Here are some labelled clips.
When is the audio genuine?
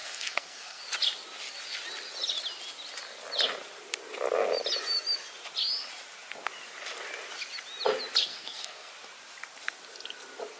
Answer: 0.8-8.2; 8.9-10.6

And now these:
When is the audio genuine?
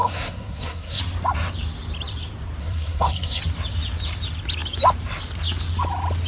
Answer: 1.0-2.6; 3.4-6.3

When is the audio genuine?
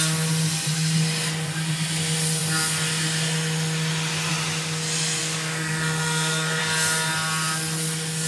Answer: 0.0-5.2; 6.6-8.3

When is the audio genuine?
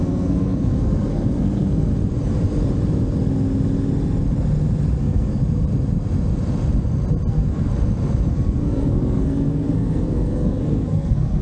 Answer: 1.9-5.0; 5.4-7.3; 7.7-8.3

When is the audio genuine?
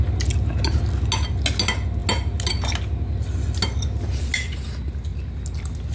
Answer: 0.0-5.9